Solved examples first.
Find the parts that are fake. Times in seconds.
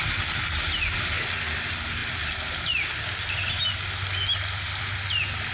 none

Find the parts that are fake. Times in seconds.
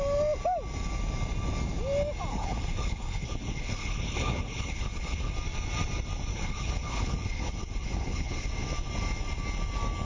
2.3-5.3 (codec, HILCodec); 6.3-8.5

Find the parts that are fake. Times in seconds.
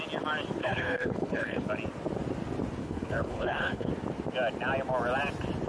0.6-1.7 (codec, HILCodec); 2.8-3.9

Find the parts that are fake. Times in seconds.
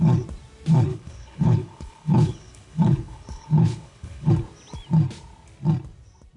0.9-4.3 (codec, HILCodec)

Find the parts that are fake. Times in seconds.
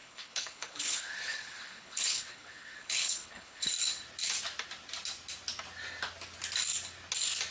0.0-3.7 (codec, HILCodec)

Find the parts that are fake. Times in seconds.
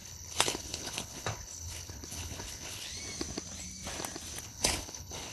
0.0-2.9 (codec, HILCodec); 4.4-5.3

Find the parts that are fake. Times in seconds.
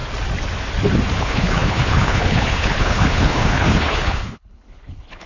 1.2-5.3 (codec, HILCodec)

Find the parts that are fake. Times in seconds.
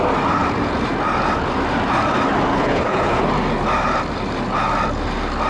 2.5-3.2 (codec, HILCodec)